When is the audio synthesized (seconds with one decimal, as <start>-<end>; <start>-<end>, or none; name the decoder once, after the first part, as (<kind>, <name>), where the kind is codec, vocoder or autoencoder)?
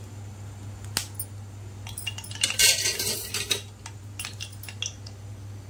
2.6-3.3 (vocoder, BigVGAN v2)